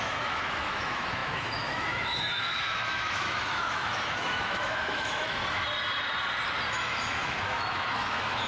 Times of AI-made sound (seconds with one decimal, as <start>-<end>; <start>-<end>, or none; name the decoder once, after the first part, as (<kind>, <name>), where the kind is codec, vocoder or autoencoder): 0.0-5.4 (autoencoder, DAC-VAE); 6.7-8.5